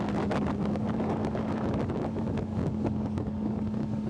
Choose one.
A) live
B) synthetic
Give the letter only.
B